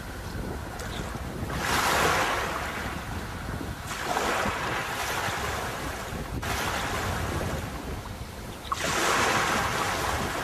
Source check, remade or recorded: recorded